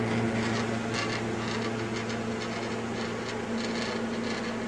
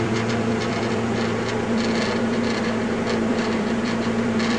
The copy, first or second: second